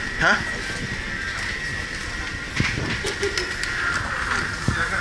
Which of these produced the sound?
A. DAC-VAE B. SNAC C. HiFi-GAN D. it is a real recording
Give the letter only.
D